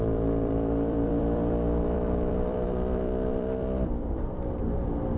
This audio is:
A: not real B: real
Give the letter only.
A